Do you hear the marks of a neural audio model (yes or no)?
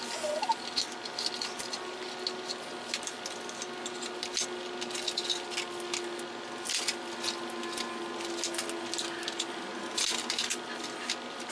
no